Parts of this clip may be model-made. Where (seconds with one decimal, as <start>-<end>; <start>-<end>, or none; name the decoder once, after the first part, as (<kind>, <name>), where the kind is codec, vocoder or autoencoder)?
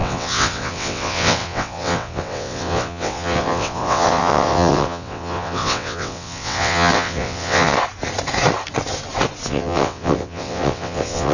0.0-7.8 (vocoder, WaveNeXt); 9.5-11.3